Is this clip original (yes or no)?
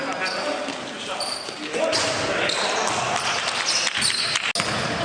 yes